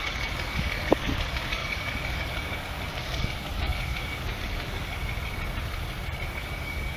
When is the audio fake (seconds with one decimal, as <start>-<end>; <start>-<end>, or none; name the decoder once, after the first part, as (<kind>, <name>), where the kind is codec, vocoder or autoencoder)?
0.0-5.0 (codec, DAC); 6.3-7.0